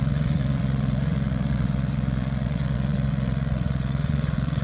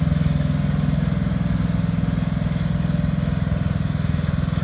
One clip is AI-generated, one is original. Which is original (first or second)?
second